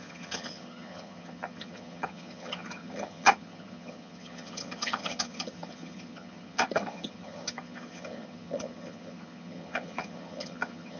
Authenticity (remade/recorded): remade